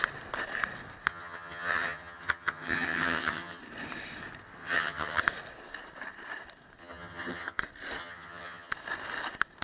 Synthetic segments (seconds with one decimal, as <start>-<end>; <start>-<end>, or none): 1.1-3.6; 4.6-5.2; 6.8-7.6; 8.0-8.7